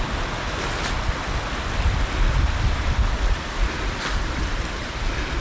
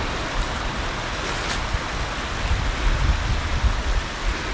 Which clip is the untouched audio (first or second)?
second